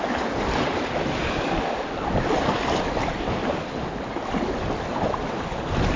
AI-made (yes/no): no